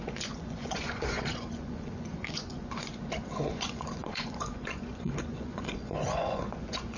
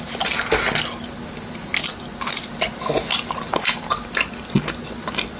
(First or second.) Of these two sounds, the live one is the second